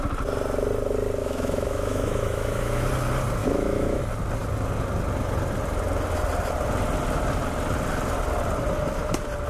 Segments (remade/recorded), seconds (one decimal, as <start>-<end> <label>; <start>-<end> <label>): 0.0-1.2 recorded; 1.2-2.9 remade; 2.9-3.4 recorded; 3.4-4.0 remade; 4.0-9.5 recorded